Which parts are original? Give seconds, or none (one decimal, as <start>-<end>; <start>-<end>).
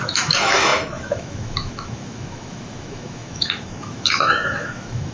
none